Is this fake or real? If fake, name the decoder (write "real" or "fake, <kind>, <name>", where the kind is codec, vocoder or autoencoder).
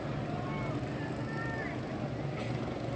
real